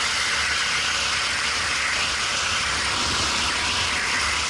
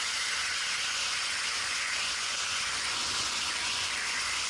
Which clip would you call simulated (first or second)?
second